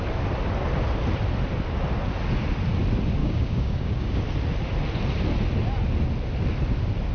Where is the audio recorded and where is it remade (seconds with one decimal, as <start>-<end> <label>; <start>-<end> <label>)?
0.0-3.2 recorded; 3.2-4.2 remade; 4.2-7.1 recorded